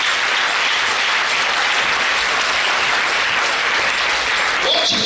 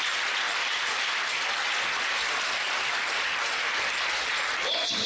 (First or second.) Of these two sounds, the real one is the first